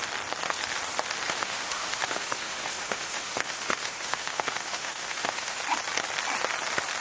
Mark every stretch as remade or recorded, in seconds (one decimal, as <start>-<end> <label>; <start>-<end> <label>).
0.0-1.4 recorded; 1.4-5.6 remade; 5.6-7.0 recorded